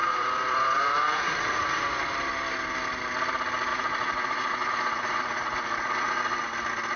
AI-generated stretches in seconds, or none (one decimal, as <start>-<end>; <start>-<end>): 0.0-2.1; 3.7-6.2